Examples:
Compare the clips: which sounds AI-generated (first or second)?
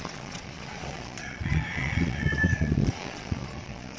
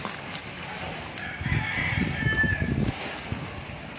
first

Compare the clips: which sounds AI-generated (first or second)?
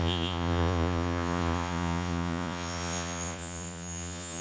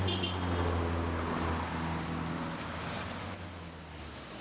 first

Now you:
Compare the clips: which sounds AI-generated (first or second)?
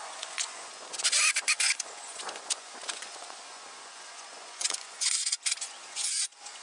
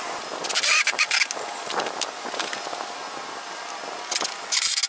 first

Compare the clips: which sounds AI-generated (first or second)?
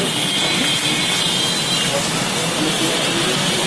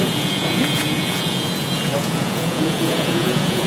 second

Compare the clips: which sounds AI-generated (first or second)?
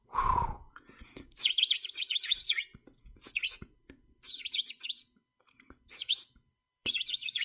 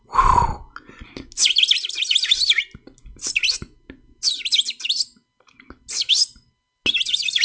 first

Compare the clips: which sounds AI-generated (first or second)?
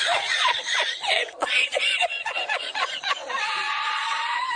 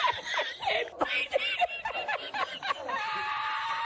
first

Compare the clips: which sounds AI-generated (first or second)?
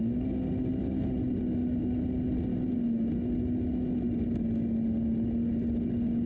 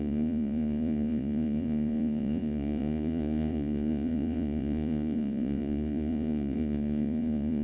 second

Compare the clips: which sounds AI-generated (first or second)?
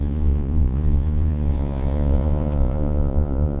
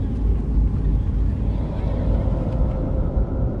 first